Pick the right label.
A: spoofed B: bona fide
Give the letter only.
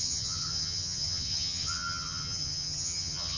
A